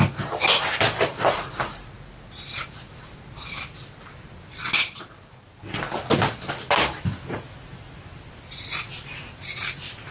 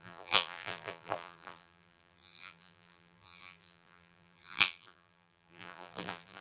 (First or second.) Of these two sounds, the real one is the first